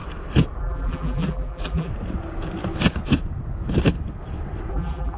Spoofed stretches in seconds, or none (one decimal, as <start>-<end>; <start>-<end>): 0.6-1.9; 4.7-5.2